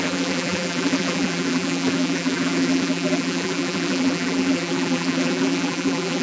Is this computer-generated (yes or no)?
yes